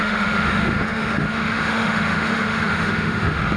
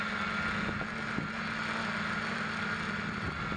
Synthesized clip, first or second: first